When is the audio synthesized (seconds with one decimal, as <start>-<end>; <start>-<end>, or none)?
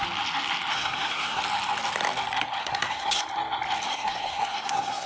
0.7-1.4; 2.6-3.2; 3.9-5.1